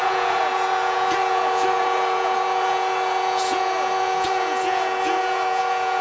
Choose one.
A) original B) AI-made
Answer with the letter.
B